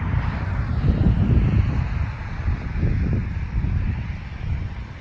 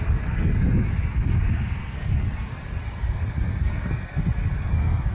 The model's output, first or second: second